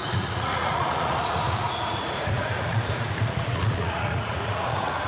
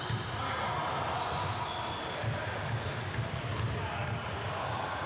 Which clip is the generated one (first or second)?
first